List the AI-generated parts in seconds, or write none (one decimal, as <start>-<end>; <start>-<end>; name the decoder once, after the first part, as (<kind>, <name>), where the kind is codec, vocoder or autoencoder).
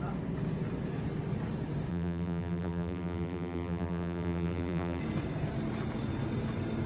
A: 1.9-5.0 (vocoder, BigVGAN v2)